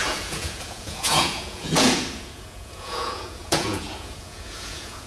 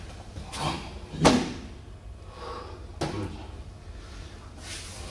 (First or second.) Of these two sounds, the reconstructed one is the first